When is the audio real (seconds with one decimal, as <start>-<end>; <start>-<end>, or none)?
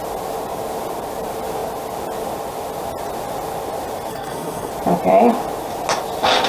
0.0-4.1; 4.7-6.5